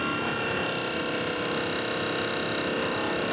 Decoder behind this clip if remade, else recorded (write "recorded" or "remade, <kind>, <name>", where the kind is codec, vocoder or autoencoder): recorded